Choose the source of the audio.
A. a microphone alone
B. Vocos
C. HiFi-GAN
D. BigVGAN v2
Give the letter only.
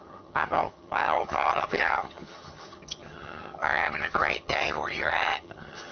C